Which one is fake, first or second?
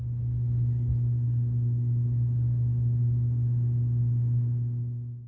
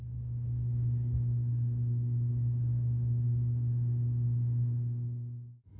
second